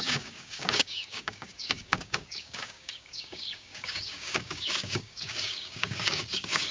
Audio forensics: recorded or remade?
remade